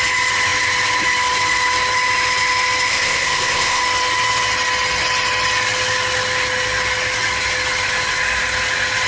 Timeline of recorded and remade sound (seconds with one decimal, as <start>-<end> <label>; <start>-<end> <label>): 0.0-2.9 recorded; 2.9-3.8 remade; 3.8-9.1 recorded